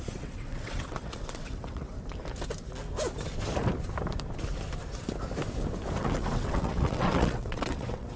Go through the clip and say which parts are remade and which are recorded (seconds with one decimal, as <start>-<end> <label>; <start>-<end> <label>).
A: 0.0-1.9 remade; 1.9-6.0 recorded; 6.0-8.2 remade